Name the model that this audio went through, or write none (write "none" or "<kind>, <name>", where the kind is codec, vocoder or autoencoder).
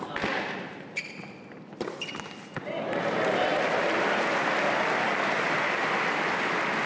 none